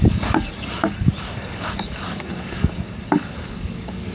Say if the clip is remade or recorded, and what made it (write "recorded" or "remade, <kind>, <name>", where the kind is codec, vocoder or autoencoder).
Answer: remade, codec, DAC